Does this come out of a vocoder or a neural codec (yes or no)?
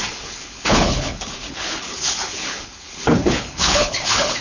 yes